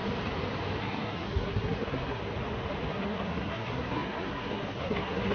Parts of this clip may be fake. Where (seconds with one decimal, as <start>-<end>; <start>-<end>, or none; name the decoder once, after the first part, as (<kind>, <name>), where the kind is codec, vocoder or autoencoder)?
0.8-2.2 (codec, SNAC); 2.9-5.3